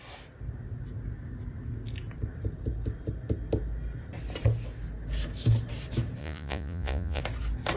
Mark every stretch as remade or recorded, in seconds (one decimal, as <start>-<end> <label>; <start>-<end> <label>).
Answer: 0.0-6.2 recorded; 6.2-7.2 remade; 7.2-7.8 recorded